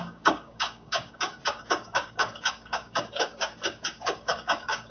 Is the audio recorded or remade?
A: remade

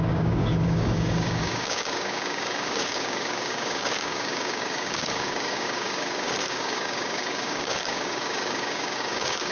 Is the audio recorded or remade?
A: remade